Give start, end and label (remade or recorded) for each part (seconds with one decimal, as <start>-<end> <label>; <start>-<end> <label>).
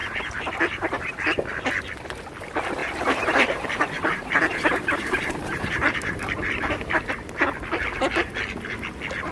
0.0-1.1 remade; 1.1-2.8 recorded; 2.8-7.1 remade; 7.1-9.3 recorded